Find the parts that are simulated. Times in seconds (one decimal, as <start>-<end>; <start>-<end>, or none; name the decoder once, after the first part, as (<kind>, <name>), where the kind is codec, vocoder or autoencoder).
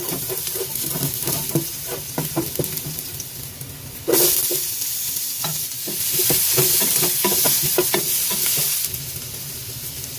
none